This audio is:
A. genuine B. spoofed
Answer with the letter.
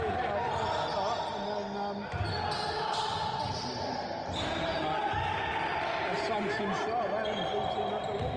A